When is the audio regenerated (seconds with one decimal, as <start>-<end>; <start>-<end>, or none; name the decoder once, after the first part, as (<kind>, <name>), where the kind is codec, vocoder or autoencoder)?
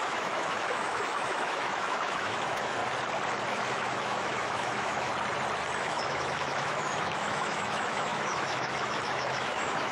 0.0-2.8 (autoencoder, DAC-VAE); 3.5-5.1; 5.8-9.9